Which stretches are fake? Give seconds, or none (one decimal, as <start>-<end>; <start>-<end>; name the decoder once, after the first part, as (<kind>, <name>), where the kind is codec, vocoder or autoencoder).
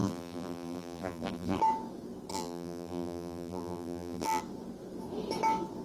0.0-1.6 (vocoder, BigVGAN v2); 2.3-4.4